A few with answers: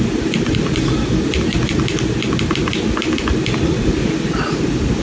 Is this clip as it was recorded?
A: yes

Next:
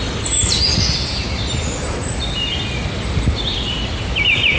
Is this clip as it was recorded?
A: yes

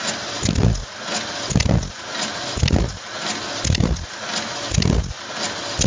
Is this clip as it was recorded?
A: yes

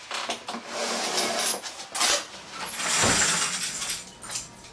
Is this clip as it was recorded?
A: yes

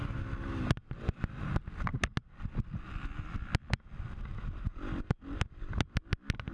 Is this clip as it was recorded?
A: yes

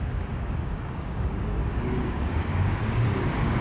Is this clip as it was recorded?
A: no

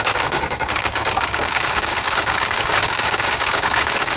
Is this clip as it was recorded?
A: no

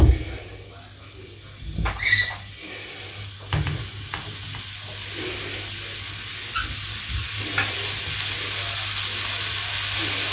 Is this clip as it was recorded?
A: yes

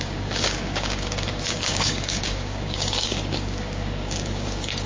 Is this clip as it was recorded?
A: no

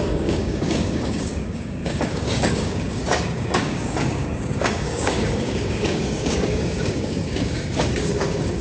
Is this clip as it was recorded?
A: no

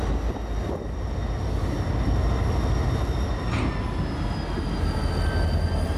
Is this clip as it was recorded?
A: yes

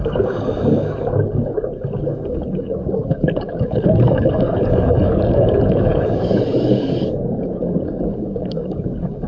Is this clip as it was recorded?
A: no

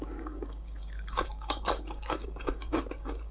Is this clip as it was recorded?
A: no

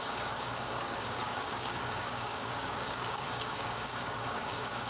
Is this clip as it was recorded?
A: no